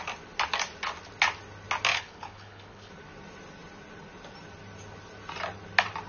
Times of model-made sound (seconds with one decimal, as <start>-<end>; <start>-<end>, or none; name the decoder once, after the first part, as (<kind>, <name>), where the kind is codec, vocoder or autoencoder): 1.9-2.9 (codec, HILCodec)